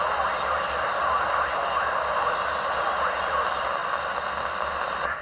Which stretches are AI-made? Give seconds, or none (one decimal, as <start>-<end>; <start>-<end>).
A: none